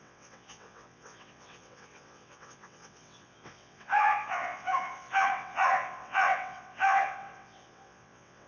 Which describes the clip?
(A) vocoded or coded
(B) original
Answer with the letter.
A